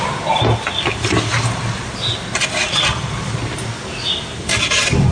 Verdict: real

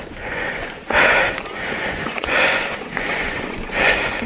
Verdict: fake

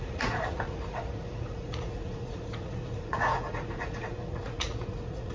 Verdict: fake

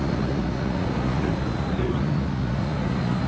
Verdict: fake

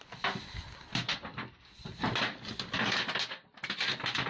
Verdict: real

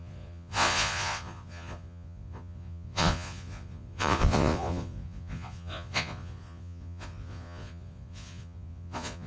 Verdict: fake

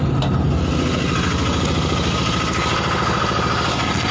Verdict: real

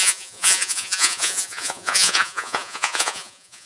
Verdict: fake